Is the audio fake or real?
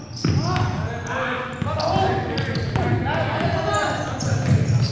real